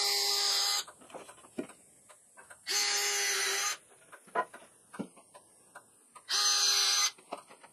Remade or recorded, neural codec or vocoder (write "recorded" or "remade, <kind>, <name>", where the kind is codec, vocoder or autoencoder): recorded